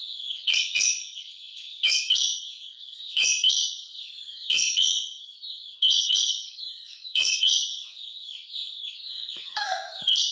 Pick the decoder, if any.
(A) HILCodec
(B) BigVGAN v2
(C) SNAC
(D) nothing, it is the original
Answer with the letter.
C